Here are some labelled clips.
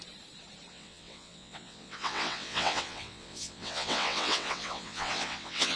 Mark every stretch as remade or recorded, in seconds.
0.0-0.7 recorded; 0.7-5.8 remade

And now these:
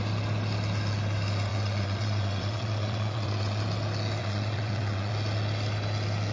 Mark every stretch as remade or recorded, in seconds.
0.0-1.5 recorded; 1.5-3.6 remade; 3.6-4.2 recorded; 4.2-5.1 remade; 5.1-6.3 recorded

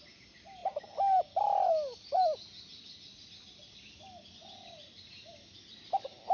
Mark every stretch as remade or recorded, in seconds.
0.0-6.3 recorded

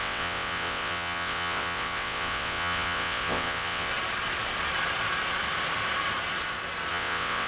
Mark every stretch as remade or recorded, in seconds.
0.0-3.9 remade; 3.9-6.9 recorded; 6.9-7.5 remade

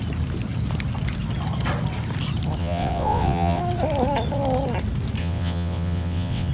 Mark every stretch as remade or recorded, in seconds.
0.0-2.6 recorded; 2.6-3.6 remade; 3.6-5.2 recorded; 5.2-6.5 remade

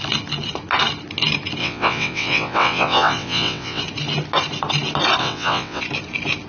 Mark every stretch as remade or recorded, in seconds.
0.0-1.6 recorded; 1.6-3.8 remade; 3.8-5.2 recorded; 5.2-5.8 remade; 5.8-6.5 recorded

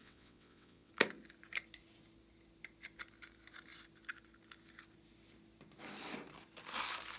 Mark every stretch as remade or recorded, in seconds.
0.0-0.9 remade; 0.9-7.2 recorded

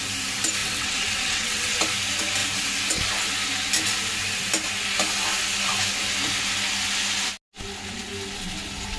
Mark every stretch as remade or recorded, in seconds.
0.0-0.6 recorded; 0.6-1.8 remade; 1.8-9.0 recorded